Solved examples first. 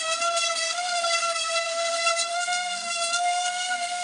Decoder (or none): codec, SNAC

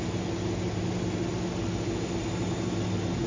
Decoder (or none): none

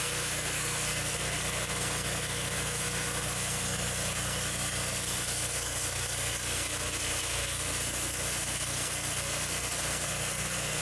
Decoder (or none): codec, SNAC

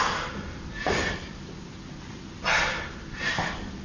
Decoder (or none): none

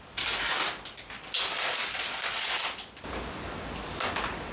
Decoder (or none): none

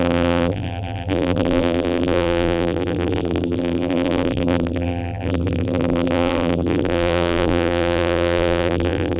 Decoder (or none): vocoder, BigVGAN v2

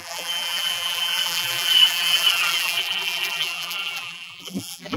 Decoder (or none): vocoder, BigVGAN v2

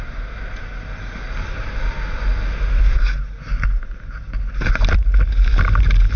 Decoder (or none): none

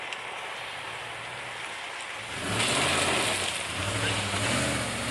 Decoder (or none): none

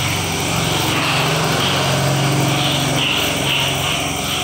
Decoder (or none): none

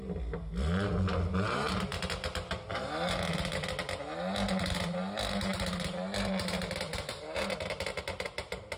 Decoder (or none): none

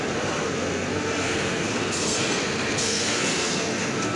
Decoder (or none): codec, SNAC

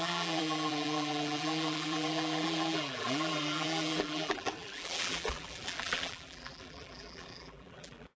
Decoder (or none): vocoder, BigVGAN v2